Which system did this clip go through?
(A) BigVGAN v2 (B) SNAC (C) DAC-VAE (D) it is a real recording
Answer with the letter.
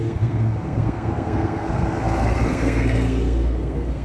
B